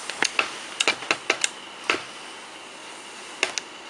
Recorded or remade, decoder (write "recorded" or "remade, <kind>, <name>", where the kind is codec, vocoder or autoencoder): recorded